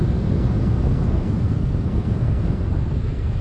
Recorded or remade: remade